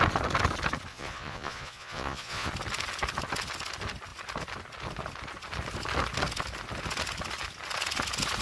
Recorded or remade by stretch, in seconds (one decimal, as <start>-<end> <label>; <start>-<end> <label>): 0.0-0.9 recorded; 0.9-2.5 remade; 2.5-8.4 recorded